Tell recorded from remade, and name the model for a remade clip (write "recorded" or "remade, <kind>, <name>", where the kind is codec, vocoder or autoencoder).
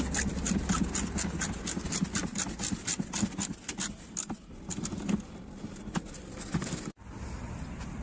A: recorded